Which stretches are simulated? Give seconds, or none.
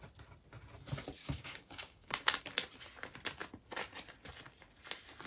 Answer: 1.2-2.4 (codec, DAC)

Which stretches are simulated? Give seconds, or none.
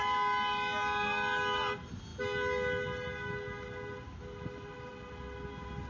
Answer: none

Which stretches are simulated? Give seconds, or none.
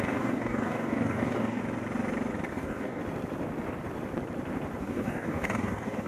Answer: 0.0-1.6 (codec, DAC); 2.5-3.0; 4.8-6.1